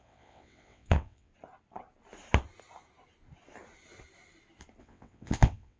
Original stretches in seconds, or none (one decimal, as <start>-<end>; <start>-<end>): 1.3-4.8